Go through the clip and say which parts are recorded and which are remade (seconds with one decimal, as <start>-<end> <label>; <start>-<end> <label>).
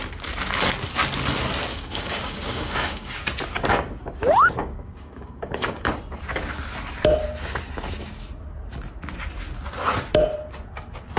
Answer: 0.0-1.7 recorded; 1.7-3.2 remade; 3.2-4.6 recorded; 4.6-5.9 remade; 5.9-11.2 recorded